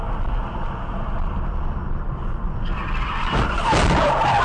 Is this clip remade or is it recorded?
recorded